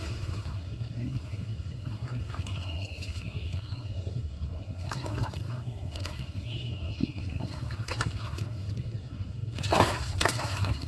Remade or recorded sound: remade